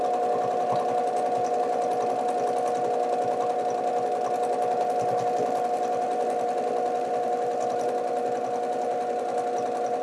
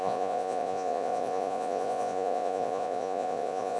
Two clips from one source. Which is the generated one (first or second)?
second